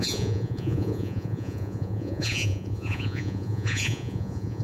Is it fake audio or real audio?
fake